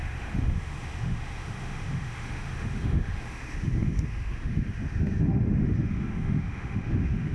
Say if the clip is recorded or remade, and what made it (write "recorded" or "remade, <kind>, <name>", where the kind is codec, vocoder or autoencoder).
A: remade, autoencoder, DAC-VAE